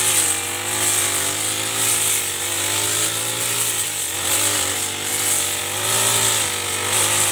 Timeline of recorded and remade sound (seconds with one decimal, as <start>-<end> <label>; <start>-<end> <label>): 0.0-7.3 recorded